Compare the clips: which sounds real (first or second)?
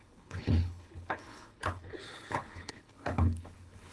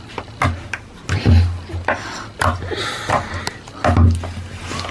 second